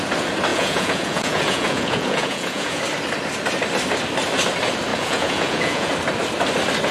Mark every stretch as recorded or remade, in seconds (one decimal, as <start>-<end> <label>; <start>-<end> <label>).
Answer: 0.0-0.5 recorded; 0.5-2.8 remade; 2.8-4.9 recorded; 4.9-5.9 remade; 5.9-6.9 recorded